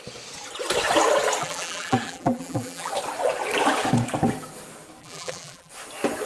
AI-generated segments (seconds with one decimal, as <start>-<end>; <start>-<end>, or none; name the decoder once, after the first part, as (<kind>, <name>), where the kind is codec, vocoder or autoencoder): 1.4-2.9 (vocoder, BigVGAN v2); 5.0-5.7